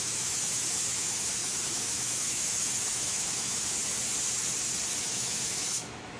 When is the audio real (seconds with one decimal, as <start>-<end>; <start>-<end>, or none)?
3.8-5.0